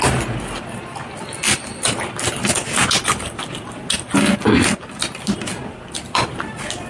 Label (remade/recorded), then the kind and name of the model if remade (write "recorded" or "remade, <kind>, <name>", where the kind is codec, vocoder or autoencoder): recorded